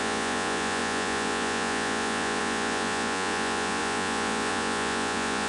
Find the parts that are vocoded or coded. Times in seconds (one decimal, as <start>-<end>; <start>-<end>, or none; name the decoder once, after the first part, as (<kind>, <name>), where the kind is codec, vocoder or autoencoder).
0.0-5.5 (vocoder, Vocos)